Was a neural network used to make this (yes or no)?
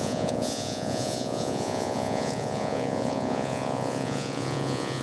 yes